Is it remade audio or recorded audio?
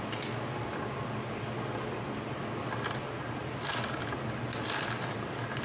recorded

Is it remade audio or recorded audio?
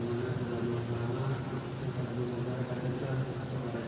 recorded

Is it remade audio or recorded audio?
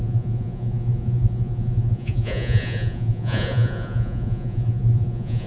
remade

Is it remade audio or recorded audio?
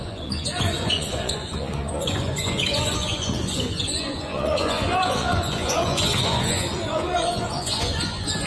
remade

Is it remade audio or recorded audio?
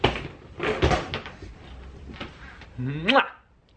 recorded